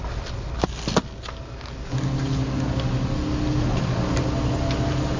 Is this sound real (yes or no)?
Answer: yes